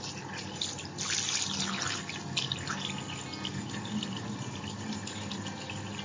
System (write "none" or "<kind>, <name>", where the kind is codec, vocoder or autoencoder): none